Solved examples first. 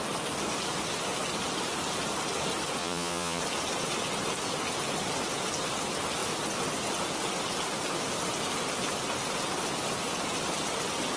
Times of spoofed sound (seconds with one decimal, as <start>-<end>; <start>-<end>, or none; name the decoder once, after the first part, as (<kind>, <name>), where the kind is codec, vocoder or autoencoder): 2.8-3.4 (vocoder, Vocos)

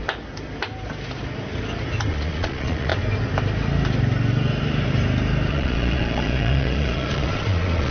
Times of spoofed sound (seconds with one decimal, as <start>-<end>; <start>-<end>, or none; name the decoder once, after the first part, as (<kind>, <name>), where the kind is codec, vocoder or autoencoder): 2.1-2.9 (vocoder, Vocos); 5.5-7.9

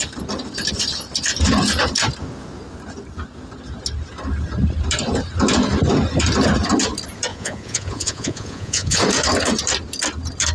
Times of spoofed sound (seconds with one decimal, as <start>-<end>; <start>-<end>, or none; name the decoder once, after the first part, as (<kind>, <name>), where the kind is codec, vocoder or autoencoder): 7.3-9.0 (vocoder, Vocos)

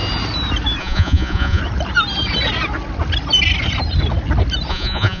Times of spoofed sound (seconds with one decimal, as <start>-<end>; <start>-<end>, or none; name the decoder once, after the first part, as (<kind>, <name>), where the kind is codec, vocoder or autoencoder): 0.8-1.6 (vocoder, Vocos); 4.7-5.2